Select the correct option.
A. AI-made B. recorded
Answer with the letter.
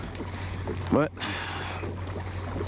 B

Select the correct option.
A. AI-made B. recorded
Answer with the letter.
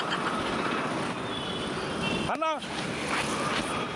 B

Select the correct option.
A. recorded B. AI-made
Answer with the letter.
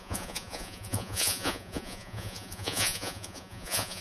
B